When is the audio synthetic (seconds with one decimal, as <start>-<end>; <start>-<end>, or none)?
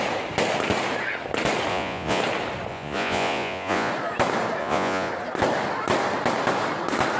1.7-2.2; 2.7-3.9; 4.6-5.1